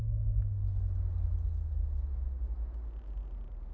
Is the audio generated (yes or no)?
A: no